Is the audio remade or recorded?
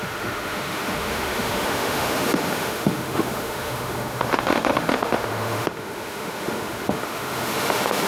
remade